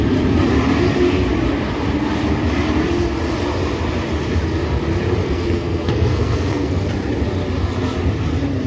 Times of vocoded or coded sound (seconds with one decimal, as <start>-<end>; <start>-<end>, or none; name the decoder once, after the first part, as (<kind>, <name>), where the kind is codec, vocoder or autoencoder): 5.2-6.9 (codec, SNAC)